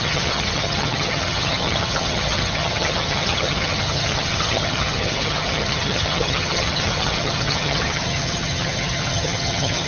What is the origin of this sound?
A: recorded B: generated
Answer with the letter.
B